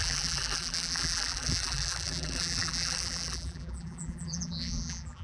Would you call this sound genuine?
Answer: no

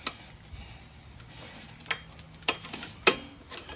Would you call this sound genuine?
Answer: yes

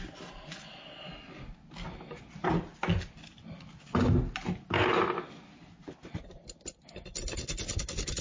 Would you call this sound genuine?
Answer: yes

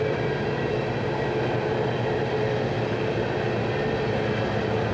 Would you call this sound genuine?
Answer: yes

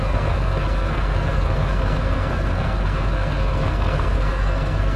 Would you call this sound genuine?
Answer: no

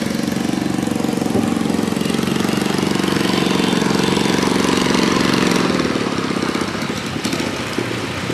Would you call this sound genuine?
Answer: yes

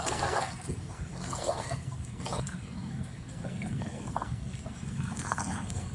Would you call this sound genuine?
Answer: no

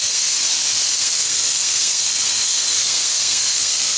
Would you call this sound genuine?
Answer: no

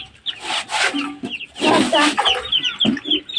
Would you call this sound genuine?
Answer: yes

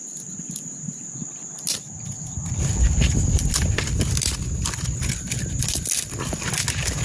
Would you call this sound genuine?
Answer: yes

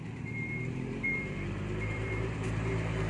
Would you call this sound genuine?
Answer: no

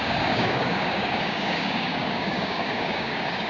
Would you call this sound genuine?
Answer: no